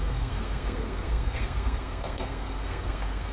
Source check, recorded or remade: remade